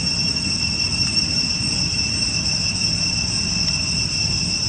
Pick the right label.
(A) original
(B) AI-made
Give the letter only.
B